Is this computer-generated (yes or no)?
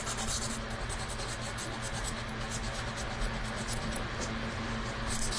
no